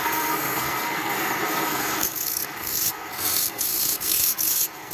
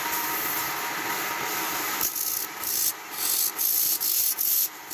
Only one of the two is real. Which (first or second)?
second